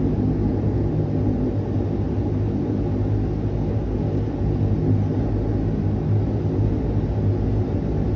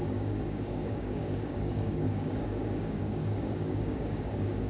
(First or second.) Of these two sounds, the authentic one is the first